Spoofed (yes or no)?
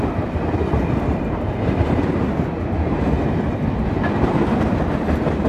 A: yes